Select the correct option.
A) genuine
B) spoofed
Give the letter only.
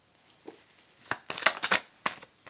A